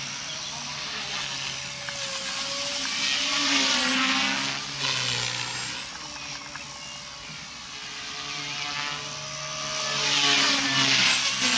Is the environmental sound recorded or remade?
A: recorded